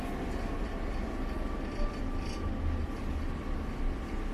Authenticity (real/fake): real